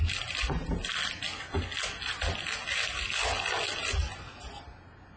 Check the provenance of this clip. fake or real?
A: real